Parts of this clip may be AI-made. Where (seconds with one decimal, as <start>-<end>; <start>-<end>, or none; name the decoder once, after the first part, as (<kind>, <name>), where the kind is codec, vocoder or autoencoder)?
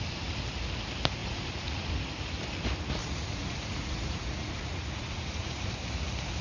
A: 1.2-1.9 (vocoder, Vocos); 3.0-5.7